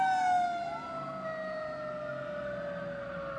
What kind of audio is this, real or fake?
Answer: real